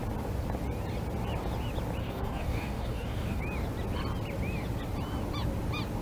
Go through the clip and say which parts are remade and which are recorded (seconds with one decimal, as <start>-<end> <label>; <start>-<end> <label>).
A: 0.0-2.0 recorded; 2.0-3.4 remade; 3.4-6.0 recorded